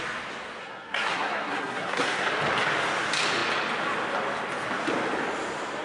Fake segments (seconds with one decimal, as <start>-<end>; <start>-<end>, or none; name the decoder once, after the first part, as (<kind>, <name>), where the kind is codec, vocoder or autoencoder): 0.6-2.3 (codec, SNAC)